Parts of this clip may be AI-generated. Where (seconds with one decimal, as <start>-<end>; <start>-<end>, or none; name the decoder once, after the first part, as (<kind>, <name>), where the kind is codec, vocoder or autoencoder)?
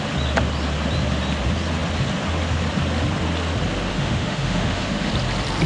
3.9-5.1 (autoencoder, DAC-VAE)